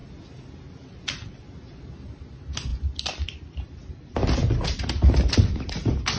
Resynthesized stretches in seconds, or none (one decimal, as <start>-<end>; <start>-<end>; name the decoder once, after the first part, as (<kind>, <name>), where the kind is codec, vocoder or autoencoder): 0.0-2.2 (vocoder, BigVGAN v2); 2.7-3.9; 4.4-5.7